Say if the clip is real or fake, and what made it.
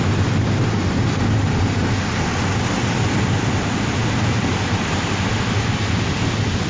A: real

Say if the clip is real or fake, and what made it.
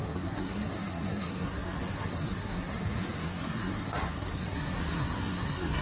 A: fake, codec, SNAC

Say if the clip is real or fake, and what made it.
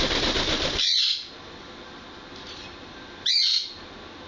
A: real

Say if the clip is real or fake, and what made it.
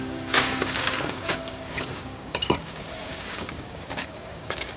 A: fake, codec, DAC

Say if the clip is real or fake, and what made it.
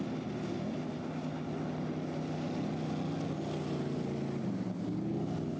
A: real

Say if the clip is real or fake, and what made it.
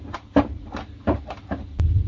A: fake, vocoder, BigVGAN v2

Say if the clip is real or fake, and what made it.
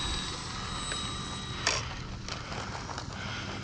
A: real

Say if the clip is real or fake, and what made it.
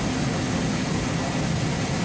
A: real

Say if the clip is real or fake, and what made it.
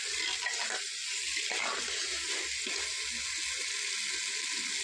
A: real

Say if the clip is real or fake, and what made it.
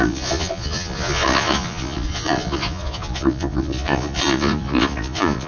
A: fake, vocoder, Vocos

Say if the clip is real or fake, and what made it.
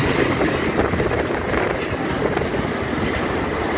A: real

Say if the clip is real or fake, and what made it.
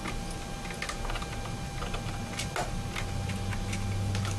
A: real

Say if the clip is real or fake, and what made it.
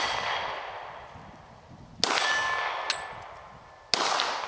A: real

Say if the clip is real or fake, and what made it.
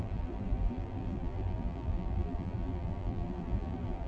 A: fake, vocoder, BigVGAN v2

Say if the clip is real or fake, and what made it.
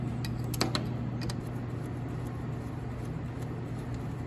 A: real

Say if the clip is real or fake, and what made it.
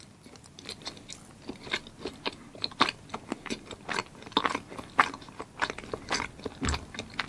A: real